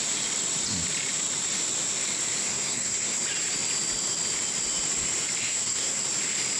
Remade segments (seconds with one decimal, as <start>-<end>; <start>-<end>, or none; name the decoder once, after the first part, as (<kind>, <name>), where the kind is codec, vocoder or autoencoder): 2.5-3.2 (codec, SNAC); 5.4-6.0